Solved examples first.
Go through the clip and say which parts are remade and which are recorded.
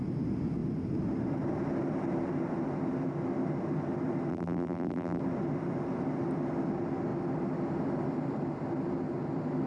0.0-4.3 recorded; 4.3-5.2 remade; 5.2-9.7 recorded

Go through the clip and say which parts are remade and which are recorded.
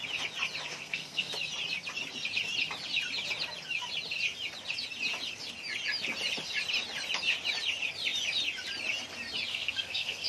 0.0-0.7 recorded; 0.7-1.3 remade; 1.3-9.5 recorded; 9.5-10.3 remade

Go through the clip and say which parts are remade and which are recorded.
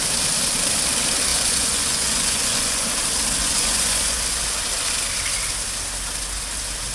0.0-1.3 recorded; 1.3-2.9 remade; 2.9-3.4 recorded; 3.4-4.2 remade; 4.2-6.9 recorded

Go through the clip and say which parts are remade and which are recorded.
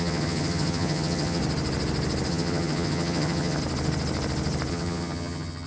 0.0-1.4 remade; 1.4-2.3 recorded; 2.3-3.6 remade; 3.6-4.7 recorded; 4.7-5.7 remade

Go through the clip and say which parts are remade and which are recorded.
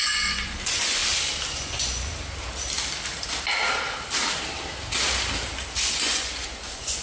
0.0-1.0 remade; 1.0-1.6 recorded; 1.6-2.1 remade; 2.1-5.9 recorded; 5.9-7.0 remade